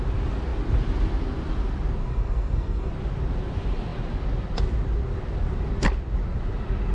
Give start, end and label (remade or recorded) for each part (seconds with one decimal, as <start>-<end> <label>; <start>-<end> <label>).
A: 0.0-2.0 recorded; 2.0-2.9 remade; 2.9-6.9 recorded